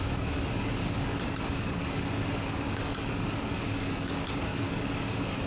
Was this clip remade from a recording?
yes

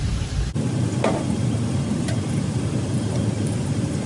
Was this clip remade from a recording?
no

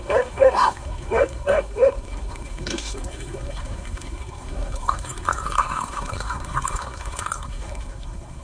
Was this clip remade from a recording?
yes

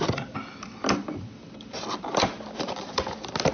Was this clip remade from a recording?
no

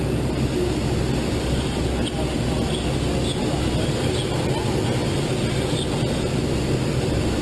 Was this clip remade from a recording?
no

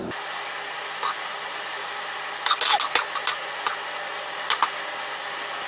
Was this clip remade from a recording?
no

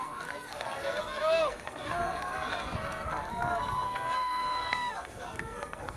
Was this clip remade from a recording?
yes